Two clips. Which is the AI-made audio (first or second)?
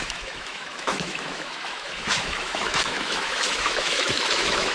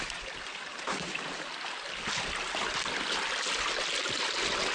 first